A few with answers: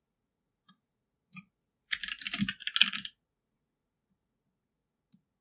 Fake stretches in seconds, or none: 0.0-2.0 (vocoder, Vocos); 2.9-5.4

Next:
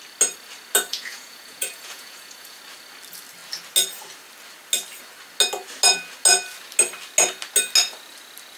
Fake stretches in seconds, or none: 0.9-2.6 (vocoder, Vocos)

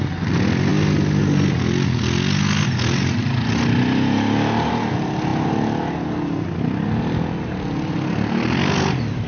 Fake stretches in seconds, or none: none

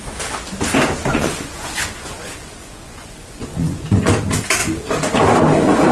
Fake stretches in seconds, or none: 1.1-4.1 (vocoder, Vocos)

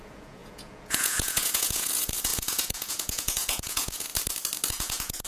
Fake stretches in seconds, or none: 0.0-4.1 (vocoder, Vocos); 4.7-5.3